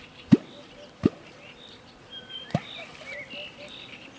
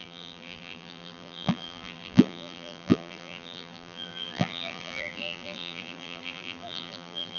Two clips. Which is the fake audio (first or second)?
second